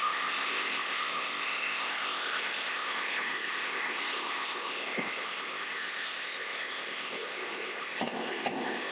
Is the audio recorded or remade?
remade